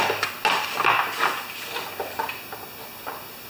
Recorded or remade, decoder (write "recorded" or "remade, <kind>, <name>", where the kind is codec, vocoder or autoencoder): recorded